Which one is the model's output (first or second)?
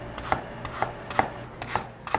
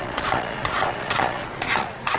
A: second